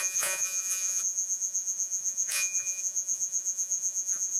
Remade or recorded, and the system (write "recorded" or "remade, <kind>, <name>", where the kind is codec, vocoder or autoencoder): remade, vocoder, Vocos